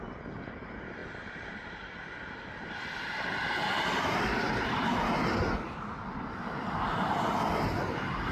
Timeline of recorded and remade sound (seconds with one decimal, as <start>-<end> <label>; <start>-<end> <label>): 0.0-1.0 recorded; 1.0-2.7 remade; 2.7-8.3 recorded